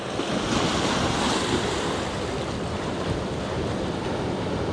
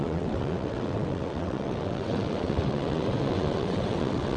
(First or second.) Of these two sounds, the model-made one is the second